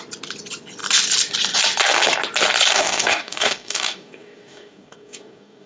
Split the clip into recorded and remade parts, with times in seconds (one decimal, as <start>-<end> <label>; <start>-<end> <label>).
0.0-2.7 recorded; 2.7-5.7 remade